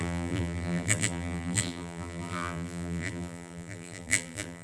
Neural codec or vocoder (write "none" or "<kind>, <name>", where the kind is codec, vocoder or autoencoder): vocoder, BigVGAN v2